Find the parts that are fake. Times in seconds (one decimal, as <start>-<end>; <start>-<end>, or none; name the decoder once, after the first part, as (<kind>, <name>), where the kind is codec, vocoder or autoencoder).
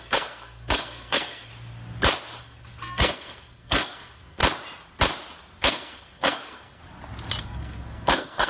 0.0-1.5 (codec, SNAC); 2.4-4.4; 5.6-6.8; 7.4-8.5